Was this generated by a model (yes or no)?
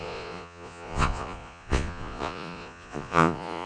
yes